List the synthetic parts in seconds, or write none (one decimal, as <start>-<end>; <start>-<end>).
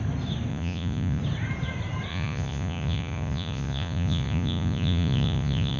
0.5-1.2; 2.1-5.8